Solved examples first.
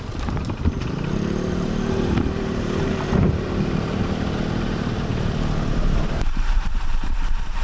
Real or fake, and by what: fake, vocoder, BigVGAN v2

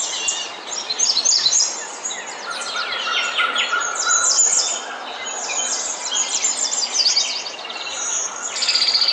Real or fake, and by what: real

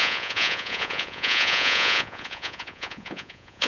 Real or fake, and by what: fake, vocoder, Vocos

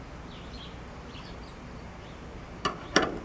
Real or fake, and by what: real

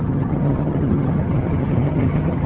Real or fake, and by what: fake, vocoder, HiFi-GAN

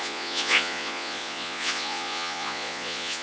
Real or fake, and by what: fake, vocoder, Vocos